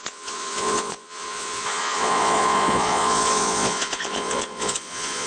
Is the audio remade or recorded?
remade